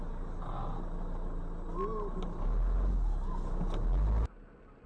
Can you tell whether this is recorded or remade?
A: recorded